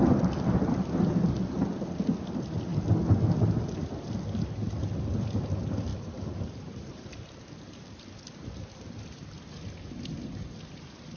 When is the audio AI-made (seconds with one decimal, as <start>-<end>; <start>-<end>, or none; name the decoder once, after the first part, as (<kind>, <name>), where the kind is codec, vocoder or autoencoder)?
5.9-8.0 (vocoder, BigVGAN v2)